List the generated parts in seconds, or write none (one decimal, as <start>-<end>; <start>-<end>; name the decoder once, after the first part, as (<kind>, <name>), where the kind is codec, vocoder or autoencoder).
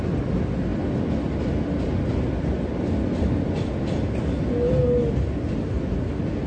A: none